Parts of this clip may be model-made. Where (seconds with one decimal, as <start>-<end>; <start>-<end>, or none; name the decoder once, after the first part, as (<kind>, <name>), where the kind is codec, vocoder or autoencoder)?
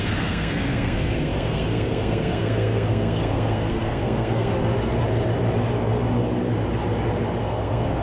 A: 0.0-4.5 (codec, SNAC); 7.4-8.0